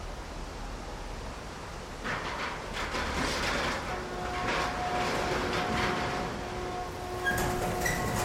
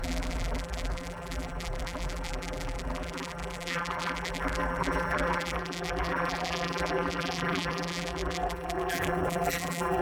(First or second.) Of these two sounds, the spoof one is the second